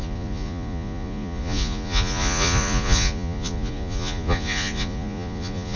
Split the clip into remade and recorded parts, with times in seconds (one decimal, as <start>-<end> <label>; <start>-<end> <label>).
0.0-5.8 remade